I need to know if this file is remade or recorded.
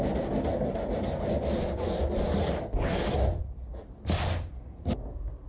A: recorded